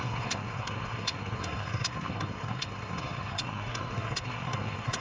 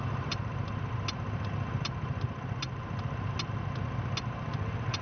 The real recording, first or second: second